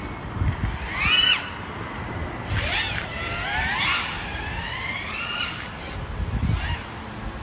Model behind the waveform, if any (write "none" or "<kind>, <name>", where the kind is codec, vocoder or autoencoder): none